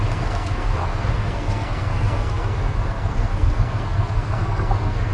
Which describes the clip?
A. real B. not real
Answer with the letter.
B